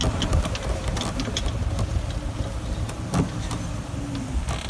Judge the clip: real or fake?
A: real